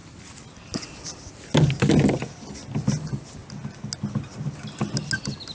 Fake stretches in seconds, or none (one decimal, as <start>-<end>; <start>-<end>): none